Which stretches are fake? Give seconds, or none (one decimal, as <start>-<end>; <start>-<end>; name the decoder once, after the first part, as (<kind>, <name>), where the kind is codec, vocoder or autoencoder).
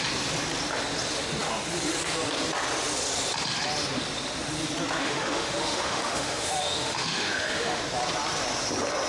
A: 5.0-7.8 (autoencoder, DAC-VAE)